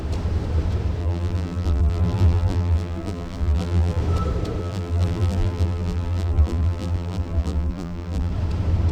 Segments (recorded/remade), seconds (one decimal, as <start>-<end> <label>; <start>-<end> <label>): 0.0-1.0 recorded; 1.0-4.0 remade; 4.0-4.6 recorded; 4.6-8.3 remade; 8.3-8.9 recorded